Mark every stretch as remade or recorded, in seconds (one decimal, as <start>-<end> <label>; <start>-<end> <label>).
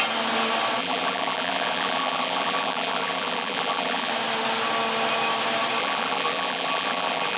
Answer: 0.0-0.8 recorded; 0.8-4.1 remade; 4.1-5.8 recorded; 5.8-7.4 remade